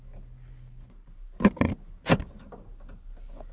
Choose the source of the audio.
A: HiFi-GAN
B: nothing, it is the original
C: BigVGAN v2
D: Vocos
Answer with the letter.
B